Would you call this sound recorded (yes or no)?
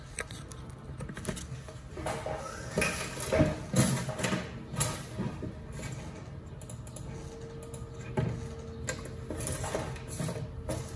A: yes